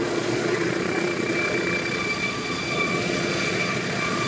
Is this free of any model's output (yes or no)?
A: no